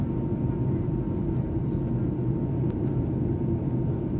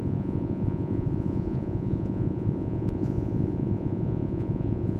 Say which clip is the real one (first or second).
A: first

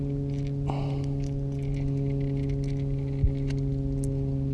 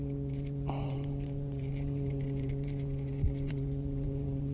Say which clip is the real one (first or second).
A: first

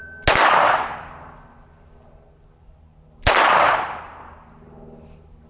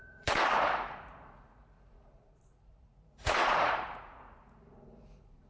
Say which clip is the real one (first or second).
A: first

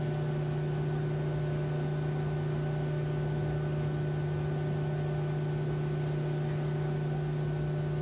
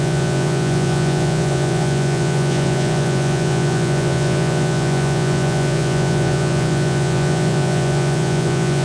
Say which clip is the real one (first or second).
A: first